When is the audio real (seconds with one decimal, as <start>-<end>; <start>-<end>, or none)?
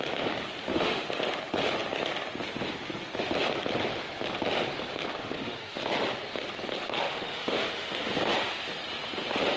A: 0.0-0.7; 1.4-5.2; 5.8-7.0; 8.1-9.6